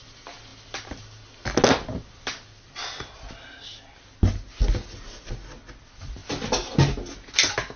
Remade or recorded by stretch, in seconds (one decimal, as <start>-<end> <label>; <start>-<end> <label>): 0.0-7.8 recorded